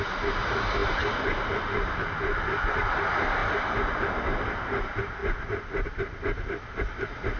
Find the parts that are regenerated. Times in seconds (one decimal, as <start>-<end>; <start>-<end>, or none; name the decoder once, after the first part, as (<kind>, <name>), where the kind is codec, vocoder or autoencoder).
none